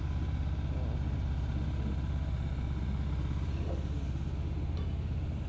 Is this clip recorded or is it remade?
recorded